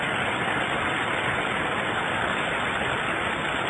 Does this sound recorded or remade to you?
recorded